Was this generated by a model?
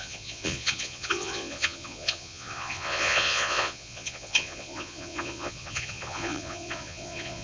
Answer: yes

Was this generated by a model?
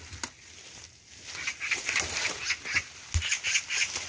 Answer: no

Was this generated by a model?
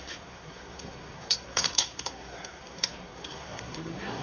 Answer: yes